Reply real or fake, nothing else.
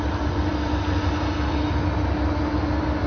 real